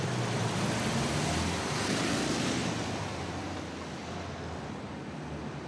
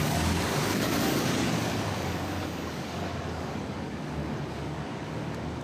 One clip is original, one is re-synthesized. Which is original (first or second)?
first